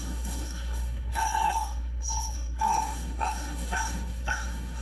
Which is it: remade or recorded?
remade